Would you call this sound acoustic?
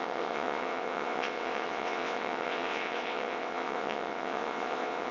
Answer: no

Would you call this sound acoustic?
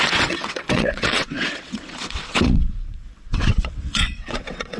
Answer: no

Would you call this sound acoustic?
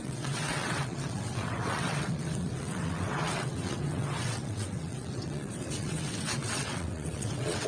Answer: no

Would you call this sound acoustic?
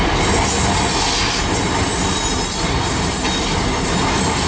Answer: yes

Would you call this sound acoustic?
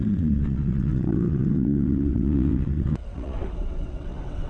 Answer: no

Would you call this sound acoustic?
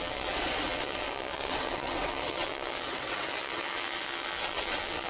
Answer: no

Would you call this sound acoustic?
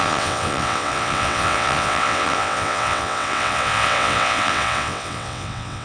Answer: no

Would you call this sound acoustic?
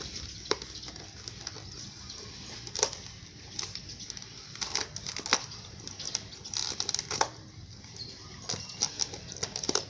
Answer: yes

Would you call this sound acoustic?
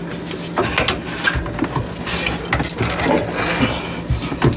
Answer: yes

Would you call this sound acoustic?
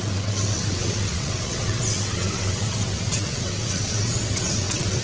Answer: no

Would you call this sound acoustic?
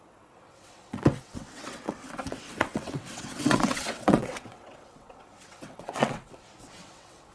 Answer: no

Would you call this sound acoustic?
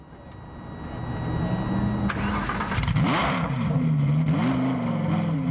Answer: yes